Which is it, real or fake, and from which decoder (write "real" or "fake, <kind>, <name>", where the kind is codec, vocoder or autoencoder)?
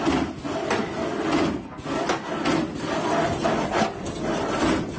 real